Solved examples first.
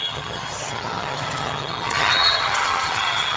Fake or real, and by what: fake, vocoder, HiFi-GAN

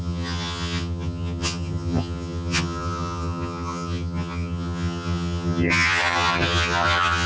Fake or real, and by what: fake, vocoder, HiFi-GAN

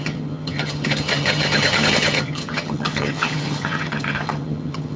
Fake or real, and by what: fake, vocoder, HiFi-GAN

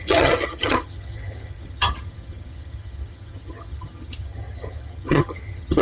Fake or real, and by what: fake, vocoder, HiFi-GAN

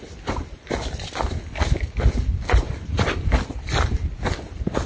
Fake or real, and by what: real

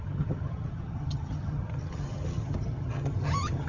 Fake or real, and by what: fake, vocoder, HiFi-GAN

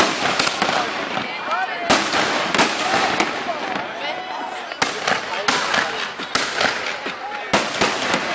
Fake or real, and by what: real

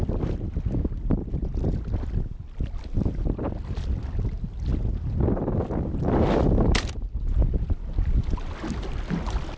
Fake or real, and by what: real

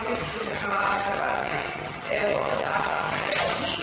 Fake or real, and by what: fake, vocoder, HiFi-GAN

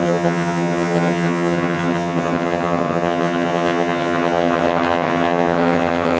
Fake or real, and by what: fake, vocoder, HiFi-GAN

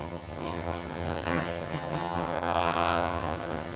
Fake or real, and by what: fake, vocoder, HiFi-GAN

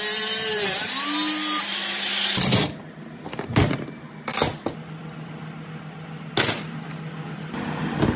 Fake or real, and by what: real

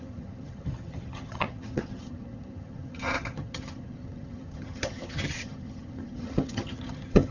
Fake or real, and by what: fake, vocoder, HiFi-GAN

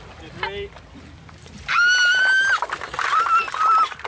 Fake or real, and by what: real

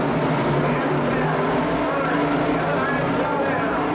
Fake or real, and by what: real